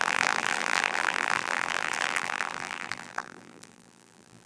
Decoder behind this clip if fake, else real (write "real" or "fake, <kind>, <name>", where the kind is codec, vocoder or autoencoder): fake, vocoder, BigVGAN v2